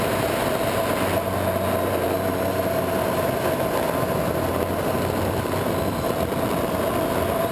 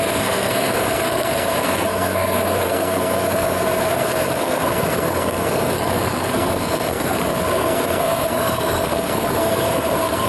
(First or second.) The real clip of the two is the first